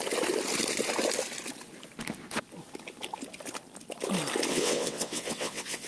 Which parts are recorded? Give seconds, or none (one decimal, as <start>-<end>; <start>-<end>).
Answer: 0.0-4.5